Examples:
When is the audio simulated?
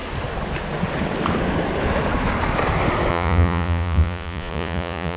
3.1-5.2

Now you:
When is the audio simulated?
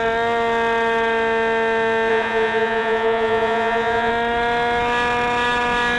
2.1-4.1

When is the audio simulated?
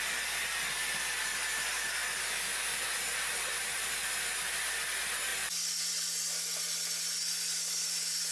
none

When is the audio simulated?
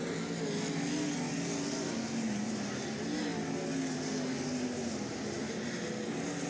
none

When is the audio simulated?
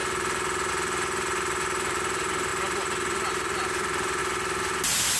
none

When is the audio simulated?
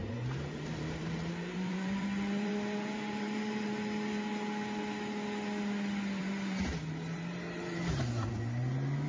0.0-3.7; 6.2-8.3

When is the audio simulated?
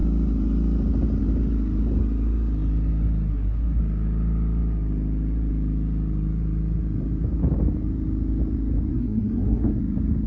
3.3-3.8; 8.9-9.8